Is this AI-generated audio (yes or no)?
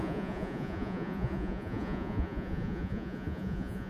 yes